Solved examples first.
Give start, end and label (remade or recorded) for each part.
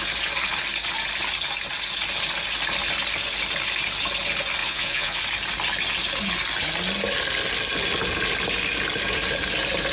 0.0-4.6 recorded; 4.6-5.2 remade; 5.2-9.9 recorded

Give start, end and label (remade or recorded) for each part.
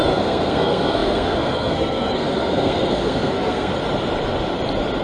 0.0-3.7 remade; 3.7-5.0 recorded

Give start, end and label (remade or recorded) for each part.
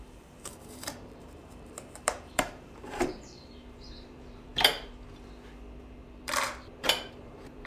0.0-4.5 remade; 4.5-5.8 recorded; 5.8-7.7 remade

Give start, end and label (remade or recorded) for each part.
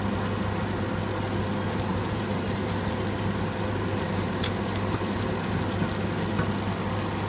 0.0-1.9 recorded; 1.9-2.9 remade; 2.9-3.9 recorded; 3.9-5.5 remade; 5.5-7.3 recorded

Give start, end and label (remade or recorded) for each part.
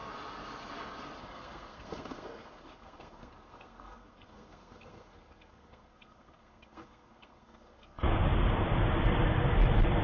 0.0-1.2 recorded; 1.2-8.1 remade; 8.1-10.0 recorded